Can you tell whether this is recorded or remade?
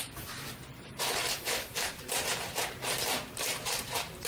remade